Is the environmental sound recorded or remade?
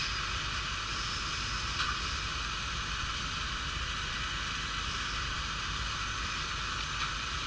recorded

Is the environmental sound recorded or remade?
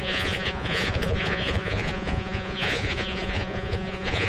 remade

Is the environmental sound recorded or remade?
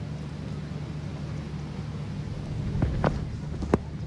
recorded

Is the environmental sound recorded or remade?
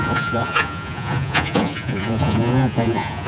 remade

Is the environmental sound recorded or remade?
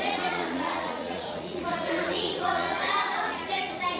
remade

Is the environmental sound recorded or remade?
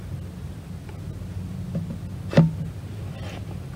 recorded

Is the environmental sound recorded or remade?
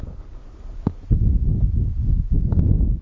recorded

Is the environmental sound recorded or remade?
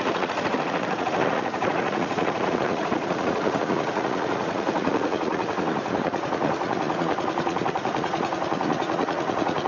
remade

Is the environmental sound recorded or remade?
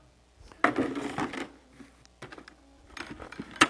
recorded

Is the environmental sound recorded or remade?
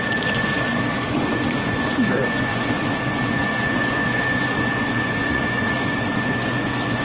remade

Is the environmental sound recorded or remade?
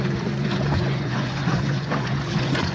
remade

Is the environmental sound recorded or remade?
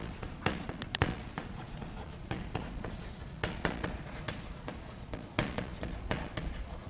remade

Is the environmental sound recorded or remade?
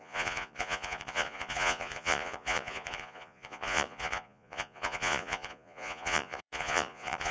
remade